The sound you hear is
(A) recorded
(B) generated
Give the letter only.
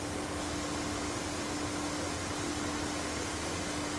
A